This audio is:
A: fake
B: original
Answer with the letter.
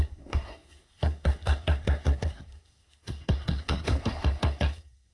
A